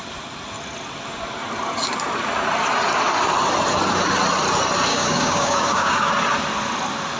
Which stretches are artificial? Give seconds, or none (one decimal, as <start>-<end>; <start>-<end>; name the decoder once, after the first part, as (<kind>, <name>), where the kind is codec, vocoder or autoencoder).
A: 4.9-6.1 (codec, DAC)